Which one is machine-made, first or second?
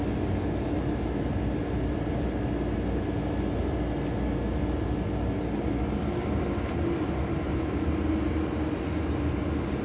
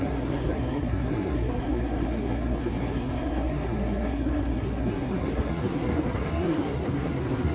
second